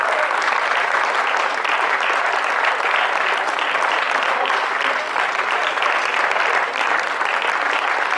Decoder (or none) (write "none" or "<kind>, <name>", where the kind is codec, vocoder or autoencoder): none